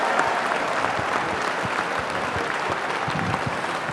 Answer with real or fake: real